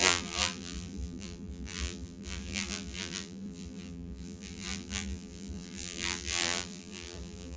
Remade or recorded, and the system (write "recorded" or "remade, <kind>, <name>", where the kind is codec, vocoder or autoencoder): remade, vocoder, BigVGAN v2